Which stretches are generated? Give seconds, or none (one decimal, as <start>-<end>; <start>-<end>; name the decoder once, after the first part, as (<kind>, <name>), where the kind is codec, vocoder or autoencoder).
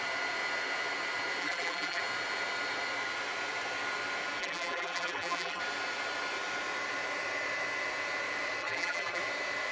1.4-2.0 (vocoder, BigVGAN v2); 4.4-5.6; 8.6-9.2